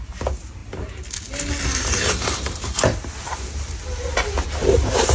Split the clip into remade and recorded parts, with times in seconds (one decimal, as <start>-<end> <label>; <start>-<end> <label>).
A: 0.0-5.1 recorded